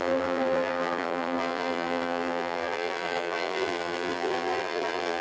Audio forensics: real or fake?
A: fake